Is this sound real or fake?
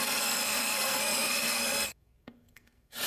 fake